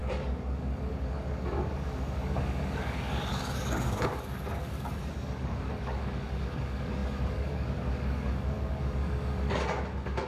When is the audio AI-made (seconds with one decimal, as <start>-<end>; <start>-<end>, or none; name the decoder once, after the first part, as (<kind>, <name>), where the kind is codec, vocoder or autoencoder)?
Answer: 0.0-10.3 (codec, DAC)